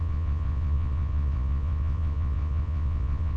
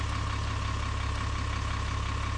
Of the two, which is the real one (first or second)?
second